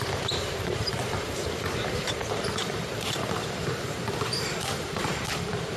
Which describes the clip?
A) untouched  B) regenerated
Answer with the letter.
B